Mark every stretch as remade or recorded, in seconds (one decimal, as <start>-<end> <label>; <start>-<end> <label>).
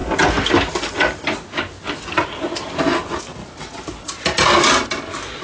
0.0-5.4 recorded